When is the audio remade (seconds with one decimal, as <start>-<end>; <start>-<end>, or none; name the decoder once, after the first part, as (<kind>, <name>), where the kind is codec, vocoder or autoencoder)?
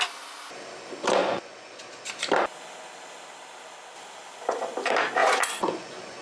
1.2-1.8 (vocoder, Vocos); 5.2-6.2